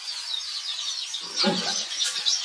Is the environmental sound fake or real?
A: fake